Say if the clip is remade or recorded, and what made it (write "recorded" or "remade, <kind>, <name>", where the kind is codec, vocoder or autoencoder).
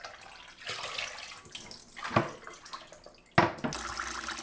recorded